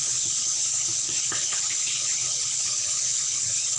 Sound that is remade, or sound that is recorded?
remade